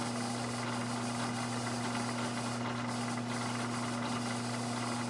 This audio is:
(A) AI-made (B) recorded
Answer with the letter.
B